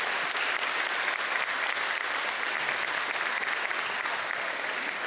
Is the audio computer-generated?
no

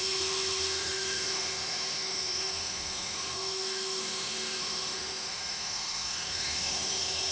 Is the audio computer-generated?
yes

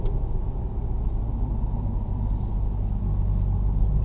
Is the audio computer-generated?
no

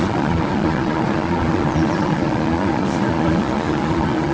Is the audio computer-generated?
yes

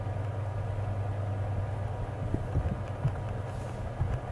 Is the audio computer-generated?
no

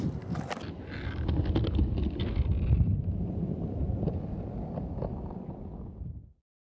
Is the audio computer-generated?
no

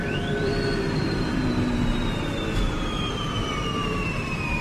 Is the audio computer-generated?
yes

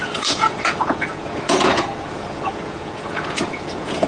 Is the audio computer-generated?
yes